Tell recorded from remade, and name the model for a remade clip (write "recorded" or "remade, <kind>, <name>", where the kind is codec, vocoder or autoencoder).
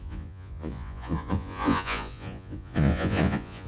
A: remade, vocoder, Vocos